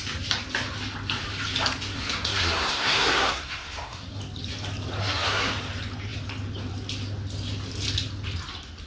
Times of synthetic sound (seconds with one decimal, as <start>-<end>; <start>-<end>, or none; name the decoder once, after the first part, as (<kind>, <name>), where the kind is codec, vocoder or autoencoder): 1.9-4.2 (codec, SNAC); 5.0-5.5